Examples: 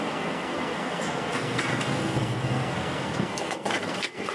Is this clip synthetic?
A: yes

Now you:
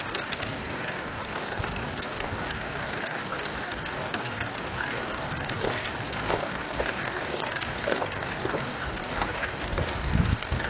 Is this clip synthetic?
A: yes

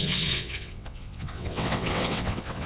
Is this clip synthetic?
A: yes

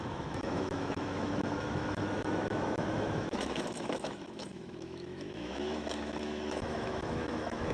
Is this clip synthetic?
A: yes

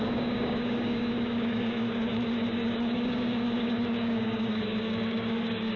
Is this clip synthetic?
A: yes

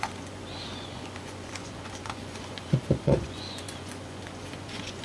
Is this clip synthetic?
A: yes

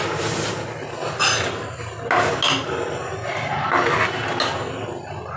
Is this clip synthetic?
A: no